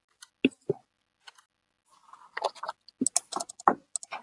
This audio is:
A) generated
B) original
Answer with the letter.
B